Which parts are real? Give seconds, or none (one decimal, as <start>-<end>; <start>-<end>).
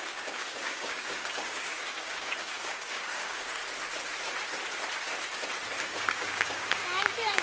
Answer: 3.6-5.8